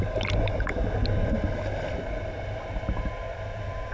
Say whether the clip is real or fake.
real